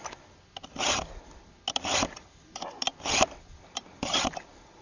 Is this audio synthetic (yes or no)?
no